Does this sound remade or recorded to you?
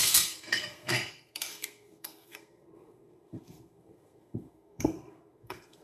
remade